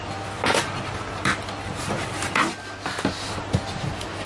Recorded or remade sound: recorded